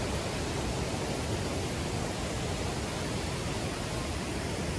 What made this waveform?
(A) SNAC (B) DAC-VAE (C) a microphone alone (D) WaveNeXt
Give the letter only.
C